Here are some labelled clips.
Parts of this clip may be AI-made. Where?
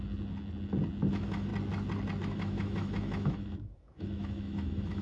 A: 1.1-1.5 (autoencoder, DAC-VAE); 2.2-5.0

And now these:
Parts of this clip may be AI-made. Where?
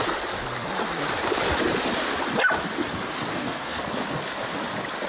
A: 3.3-3.8 (codec, SNAC)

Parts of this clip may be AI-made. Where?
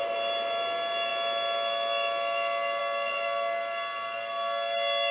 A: none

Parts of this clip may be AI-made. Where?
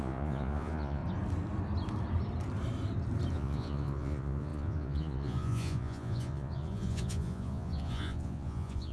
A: 0.0-1.0 (vocoder, Vocos); 3.3-8.9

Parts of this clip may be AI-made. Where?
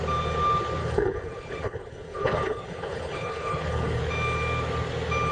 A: 0.8-4.0 (codec, HILCodec)